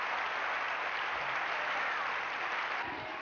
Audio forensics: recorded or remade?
recorded